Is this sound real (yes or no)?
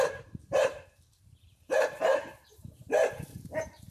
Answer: no